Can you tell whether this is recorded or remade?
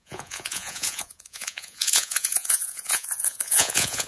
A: remade